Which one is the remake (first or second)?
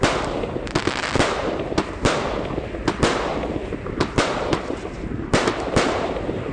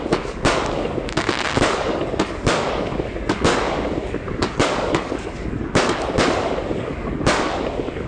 second